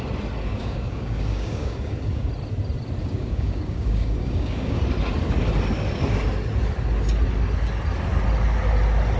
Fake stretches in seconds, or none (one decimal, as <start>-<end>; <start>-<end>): 0.5-2.3; 3.0-4.8